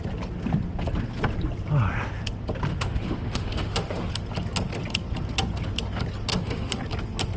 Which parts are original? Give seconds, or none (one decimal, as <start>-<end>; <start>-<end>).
0.0-2.7; 4.1-6.3; 6.8-7.4